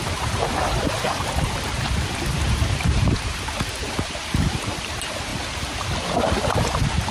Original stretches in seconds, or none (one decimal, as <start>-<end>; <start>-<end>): 5.3-6.0